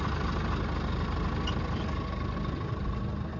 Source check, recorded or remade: recorded